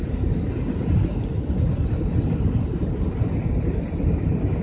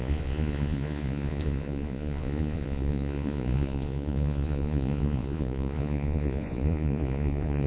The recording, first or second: first